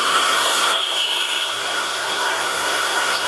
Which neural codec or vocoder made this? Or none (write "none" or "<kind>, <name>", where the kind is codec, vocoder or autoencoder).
codec, SNAC